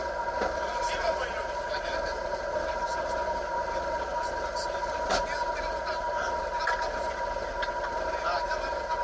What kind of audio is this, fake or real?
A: real